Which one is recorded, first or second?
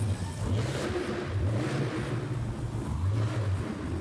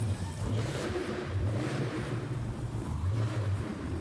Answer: first